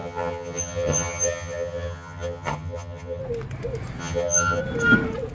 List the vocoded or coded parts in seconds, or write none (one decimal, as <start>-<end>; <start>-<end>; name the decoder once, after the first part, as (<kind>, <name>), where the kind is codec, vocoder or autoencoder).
0.0-3.2 (vocoder, HiFi-GAN); 4.0-4.6